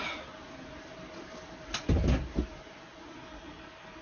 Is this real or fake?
real